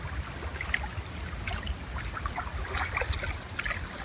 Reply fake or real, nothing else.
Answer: real